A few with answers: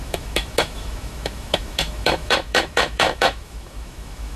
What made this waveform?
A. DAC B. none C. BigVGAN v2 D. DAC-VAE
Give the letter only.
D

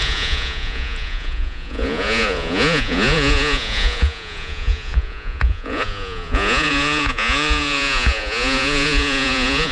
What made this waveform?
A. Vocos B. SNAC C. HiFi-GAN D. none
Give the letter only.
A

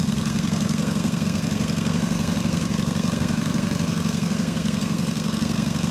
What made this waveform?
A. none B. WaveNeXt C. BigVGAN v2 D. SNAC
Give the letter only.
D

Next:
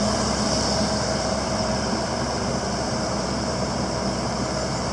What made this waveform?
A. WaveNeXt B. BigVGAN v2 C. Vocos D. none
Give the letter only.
B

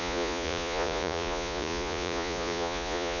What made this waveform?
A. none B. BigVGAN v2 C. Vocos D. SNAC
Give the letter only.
C